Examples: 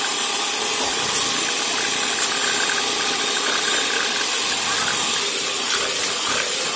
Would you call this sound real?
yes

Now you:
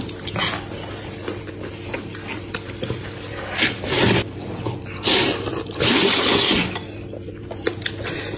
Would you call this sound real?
yes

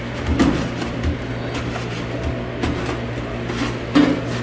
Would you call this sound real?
yes